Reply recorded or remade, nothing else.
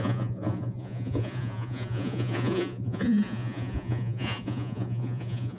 remade